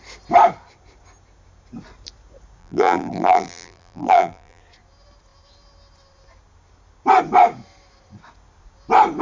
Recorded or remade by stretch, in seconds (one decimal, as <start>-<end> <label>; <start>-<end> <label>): 0.0-2.6 recorded; 2.6-4.6 remade; 4.6-9.2 recorded